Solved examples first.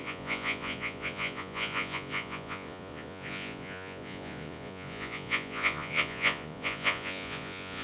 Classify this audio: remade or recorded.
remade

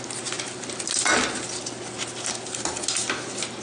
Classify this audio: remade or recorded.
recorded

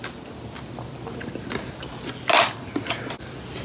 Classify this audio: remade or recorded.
recorded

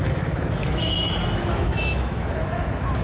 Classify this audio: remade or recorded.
remade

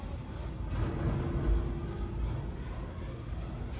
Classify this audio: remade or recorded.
recorded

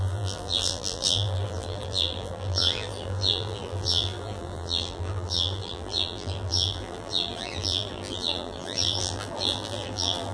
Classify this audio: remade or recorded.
remade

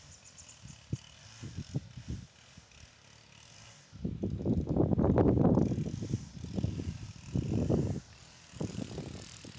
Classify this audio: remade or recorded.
recorded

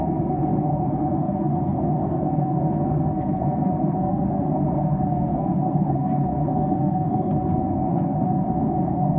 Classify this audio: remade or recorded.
remade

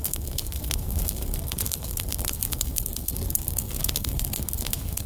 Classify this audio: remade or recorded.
remade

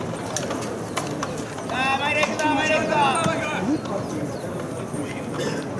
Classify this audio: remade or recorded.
recorded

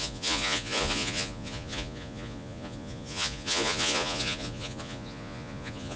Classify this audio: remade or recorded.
remade